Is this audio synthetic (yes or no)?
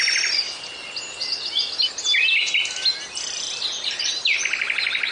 no